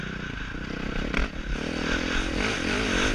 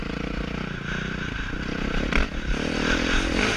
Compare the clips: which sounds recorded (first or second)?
first